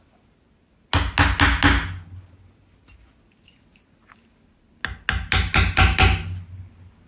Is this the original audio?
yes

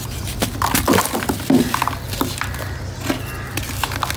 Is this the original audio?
yes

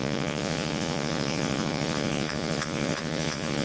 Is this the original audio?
no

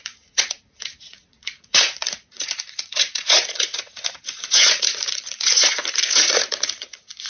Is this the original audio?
no